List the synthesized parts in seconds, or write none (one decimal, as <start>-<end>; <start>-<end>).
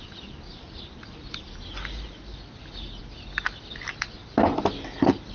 none